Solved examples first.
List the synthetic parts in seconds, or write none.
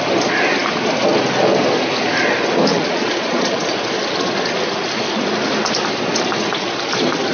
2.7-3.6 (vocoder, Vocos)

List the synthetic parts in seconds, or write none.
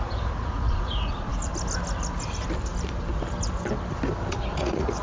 0.0-1.3 (vocoder, Vocos); 4.3-5.0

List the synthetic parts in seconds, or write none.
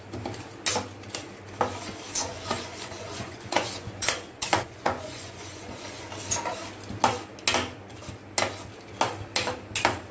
2.2-6.1 (vocoder, Vocos)